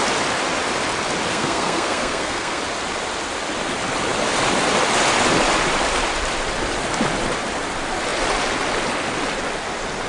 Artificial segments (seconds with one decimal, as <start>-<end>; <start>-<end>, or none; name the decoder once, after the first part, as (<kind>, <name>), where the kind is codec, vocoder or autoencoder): 1.3-2.6 (codec, SNAC)